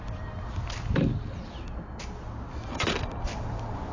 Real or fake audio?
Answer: real